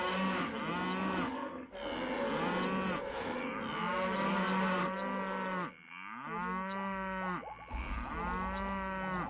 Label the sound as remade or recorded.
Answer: recorded